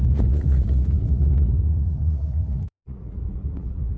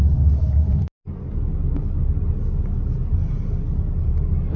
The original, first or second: second